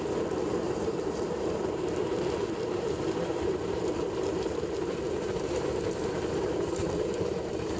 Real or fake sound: fake